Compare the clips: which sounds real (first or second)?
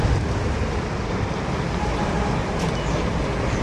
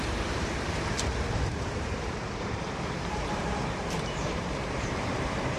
first